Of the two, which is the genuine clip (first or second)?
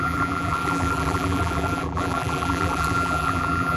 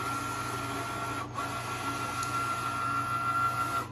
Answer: second